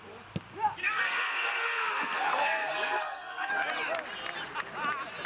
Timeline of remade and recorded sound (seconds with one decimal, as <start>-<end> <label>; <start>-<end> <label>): 0.0-0.8 recorded; 0.8-3.5 remade; 3.5-5.3 recorded